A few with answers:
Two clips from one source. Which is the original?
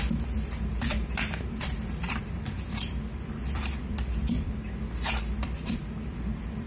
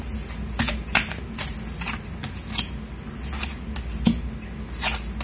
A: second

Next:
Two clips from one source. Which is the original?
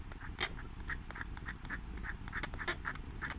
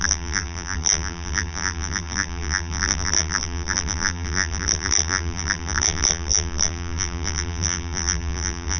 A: first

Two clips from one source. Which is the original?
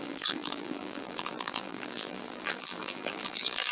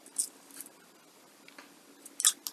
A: second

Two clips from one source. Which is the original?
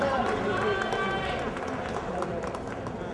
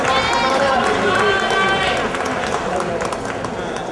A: second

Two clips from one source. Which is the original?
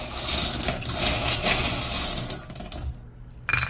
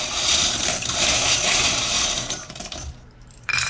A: first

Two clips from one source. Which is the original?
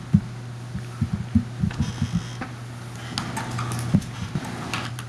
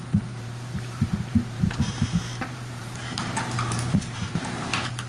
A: first